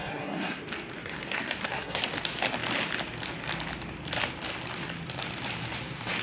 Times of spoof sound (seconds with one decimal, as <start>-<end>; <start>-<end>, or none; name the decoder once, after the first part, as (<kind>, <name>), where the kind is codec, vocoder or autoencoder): 0.0-0.6 (codec, SNAC); 1.0-2.0